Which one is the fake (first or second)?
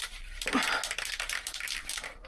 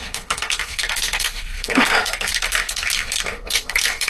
second